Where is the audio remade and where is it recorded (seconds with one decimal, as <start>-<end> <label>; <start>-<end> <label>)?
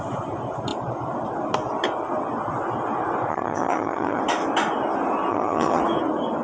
0.0-3.3 recorded; 3.3-4.2 remade; 4.2-5.3 recorded; 5.3-5.8 remade; 5.8-6.4 recorded